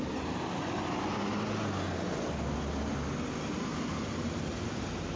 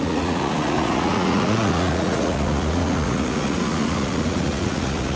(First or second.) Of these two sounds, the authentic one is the first